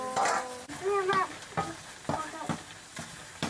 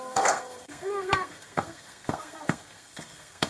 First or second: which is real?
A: first